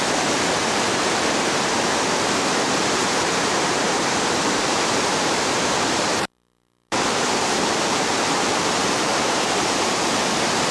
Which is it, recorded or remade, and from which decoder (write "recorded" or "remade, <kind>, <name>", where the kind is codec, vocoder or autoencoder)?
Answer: remade, vocoder, BigVGAN v2